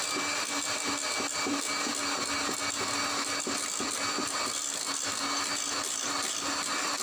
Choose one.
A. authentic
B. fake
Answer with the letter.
A